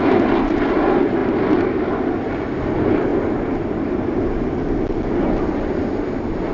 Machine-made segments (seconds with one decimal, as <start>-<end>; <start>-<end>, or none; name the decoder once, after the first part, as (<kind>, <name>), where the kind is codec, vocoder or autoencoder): none